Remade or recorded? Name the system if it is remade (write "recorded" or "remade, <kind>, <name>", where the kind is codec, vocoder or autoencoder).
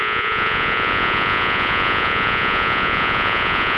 remade, vocoder, Vocos